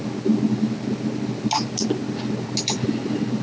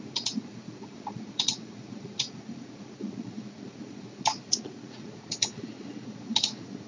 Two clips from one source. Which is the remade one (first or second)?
second